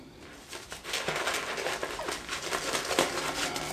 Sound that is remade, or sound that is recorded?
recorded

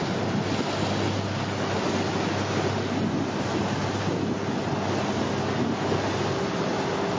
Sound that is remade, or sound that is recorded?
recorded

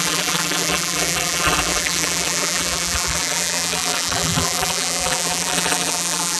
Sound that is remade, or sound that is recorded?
remade